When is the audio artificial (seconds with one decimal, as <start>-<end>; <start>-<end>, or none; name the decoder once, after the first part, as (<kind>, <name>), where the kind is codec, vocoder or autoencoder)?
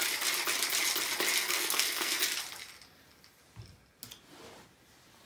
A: 1.4-2.2 (codec, SNAC)